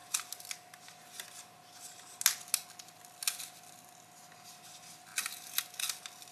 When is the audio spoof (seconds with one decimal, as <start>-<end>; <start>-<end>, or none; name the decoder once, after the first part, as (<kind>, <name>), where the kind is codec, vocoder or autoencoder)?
none